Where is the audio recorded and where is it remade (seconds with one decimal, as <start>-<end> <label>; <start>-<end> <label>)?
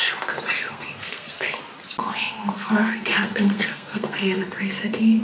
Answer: 0.0-0.6 recorded; 0.6-1.6 remade; 1.6-2.0 recorded; 2.0-5.2 remade